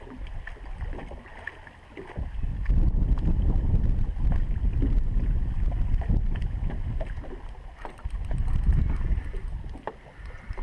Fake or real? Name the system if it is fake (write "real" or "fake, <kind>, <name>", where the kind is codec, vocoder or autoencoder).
real